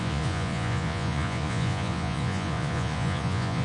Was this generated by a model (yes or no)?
yes